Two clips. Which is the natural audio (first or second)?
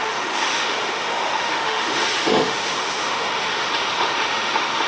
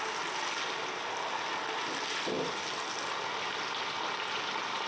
second